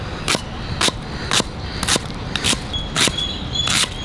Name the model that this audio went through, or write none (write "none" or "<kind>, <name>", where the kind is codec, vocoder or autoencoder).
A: none